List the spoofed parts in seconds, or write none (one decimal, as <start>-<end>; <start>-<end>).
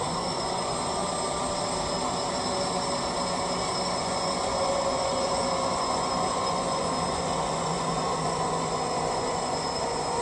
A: 0.0-1.0; 4.0-10.2